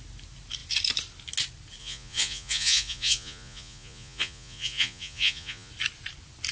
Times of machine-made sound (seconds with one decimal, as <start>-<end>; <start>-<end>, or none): 1.8-5.7